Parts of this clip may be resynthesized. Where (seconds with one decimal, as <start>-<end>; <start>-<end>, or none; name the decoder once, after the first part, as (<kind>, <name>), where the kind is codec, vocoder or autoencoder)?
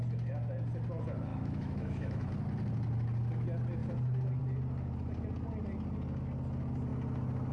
1.3-2.3 (autoencoder, DAC-VAE)